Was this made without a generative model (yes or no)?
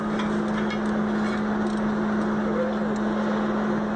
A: yes